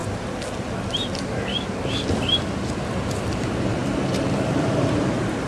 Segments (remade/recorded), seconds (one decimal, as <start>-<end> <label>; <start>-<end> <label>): 0.0-3.3 recorded; 3.3-5.5 remade